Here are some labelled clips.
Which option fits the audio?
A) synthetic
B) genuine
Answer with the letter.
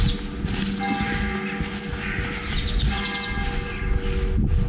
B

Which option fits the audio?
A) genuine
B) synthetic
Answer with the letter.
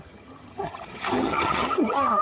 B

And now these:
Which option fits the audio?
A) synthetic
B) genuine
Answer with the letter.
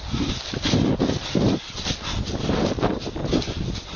B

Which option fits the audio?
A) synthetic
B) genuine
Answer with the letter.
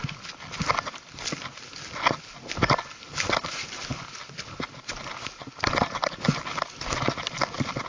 B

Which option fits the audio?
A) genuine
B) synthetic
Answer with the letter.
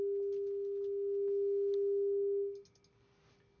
A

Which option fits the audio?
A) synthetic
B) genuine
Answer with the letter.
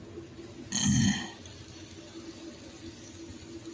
B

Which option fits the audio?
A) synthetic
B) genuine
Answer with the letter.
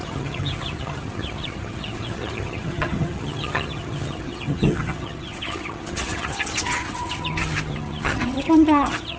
A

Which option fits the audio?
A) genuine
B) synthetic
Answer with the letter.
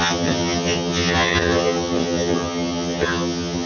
B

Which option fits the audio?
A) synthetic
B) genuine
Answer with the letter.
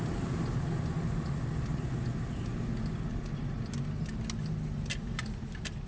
B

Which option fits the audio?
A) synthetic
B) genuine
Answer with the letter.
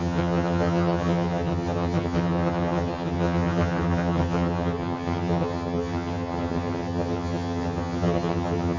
A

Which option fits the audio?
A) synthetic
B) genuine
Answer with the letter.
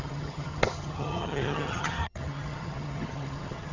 A